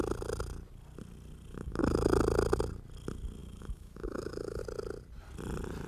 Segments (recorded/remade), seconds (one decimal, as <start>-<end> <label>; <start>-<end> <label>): 0.0-1.5 recorded; 1.5-2.2 remade; 2.2-3.4 recorded; 3.4-4.6 remade; 4.6-5.9 recorded